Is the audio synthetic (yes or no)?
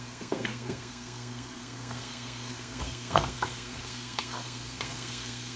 yes